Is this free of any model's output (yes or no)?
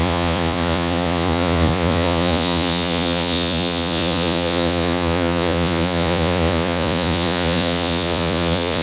no